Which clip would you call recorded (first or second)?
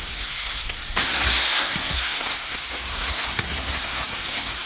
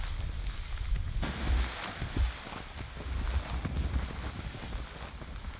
second